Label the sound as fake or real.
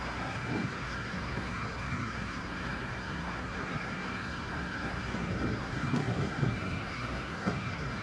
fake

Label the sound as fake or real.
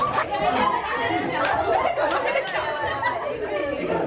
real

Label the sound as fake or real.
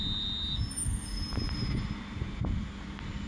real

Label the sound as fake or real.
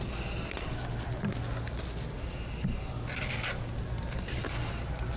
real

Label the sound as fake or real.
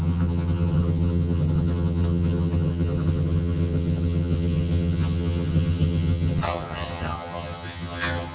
fake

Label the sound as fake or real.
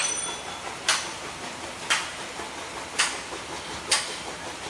real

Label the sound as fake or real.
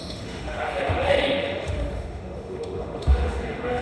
fake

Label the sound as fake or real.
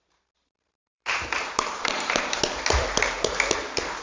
fake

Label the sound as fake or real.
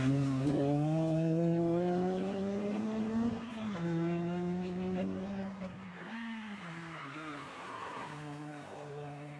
fake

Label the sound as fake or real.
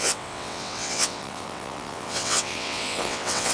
fake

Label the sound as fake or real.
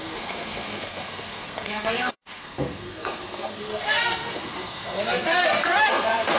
fake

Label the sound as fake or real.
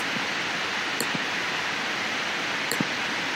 real